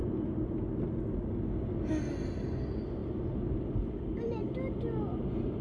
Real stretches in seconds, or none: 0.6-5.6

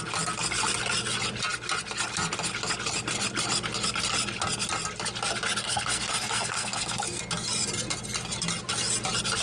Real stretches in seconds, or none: 0.0-5.6; 7.2-9.4

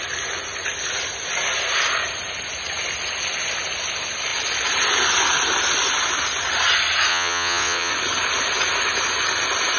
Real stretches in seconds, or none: 0.0-7.1; 7.9-9.8